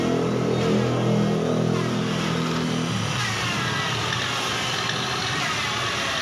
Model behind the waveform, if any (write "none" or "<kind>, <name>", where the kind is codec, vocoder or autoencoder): none